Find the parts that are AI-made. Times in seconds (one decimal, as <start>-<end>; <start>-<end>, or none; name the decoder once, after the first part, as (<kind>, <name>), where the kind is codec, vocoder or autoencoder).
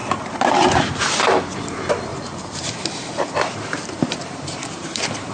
0.0-1.0 (vocoder, BigVGAN v2); 2.1-5.3